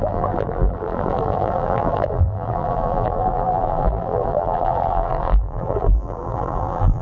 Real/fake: fake